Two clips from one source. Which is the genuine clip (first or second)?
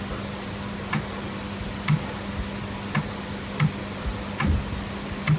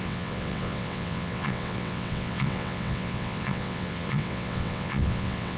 first